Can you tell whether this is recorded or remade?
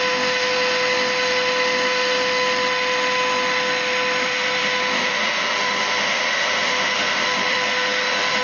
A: remade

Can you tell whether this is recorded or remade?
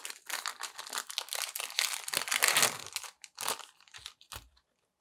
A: recorded